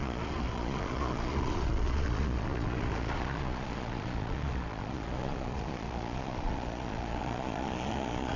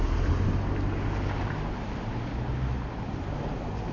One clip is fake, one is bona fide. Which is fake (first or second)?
first